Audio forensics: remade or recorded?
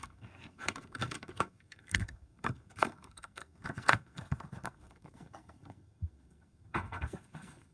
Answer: remade